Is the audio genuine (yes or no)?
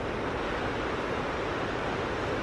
yes